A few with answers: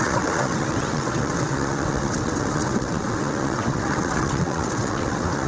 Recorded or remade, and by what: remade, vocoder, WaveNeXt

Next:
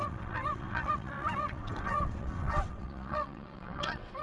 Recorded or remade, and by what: remade, vocoder, WaveNeXt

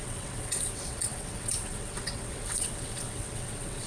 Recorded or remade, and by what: remade, vocoder, WaveNeXt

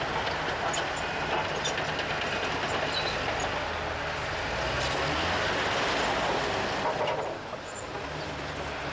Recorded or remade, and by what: recorded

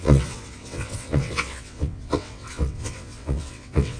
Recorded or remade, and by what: remade, vocoder, WaveNeXt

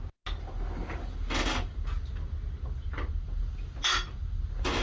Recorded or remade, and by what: recorded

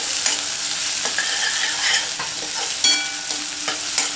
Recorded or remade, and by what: recorded